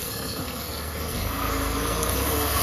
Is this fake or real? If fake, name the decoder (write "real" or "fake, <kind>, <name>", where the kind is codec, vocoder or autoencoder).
fake, codec, SNAC